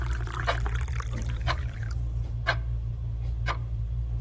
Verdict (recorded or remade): remade